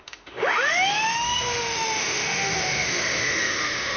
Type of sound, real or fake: fake